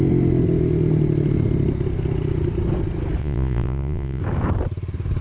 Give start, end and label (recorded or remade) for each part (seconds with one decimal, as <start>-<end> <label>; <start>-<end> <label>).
0.0-3.2 recorded; 3.2-4.2 remade; 4.2-5.2 recorded